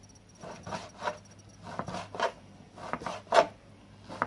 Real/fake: real